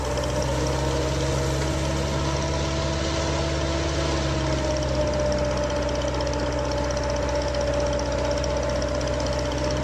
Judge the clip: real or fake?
real